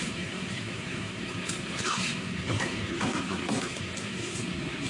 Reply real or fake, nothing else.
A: fake